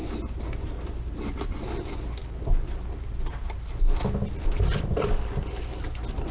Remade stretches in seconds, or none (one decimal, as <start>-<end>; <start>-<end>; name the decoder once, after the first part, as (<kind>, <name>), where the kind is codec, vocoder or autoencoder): none